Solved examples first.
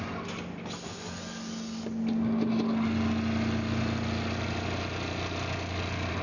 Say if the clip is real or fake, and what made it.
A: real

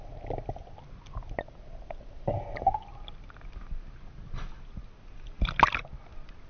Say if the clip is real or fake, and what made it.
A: real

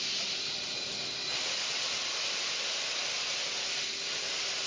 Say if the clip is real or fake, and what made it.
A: real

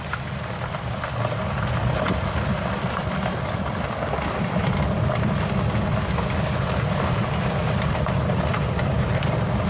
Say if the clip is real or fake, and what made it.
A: real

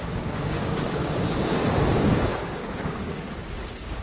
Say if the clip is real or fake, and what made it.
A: fake, codec, DAC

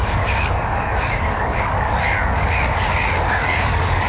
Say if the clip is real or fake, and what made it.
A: fake, codec, DAC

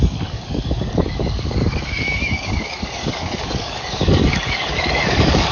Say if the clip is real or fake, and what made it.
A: fake, codec, DAC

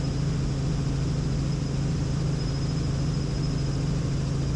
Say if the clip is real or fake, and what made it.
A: real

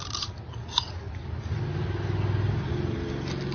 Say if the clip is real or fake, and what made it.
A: real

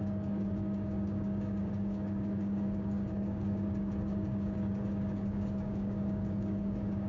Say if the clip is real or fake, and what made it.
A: fake, codec, DAC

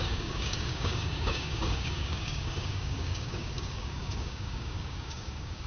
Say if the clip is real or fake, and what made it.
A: fake, codec, DAC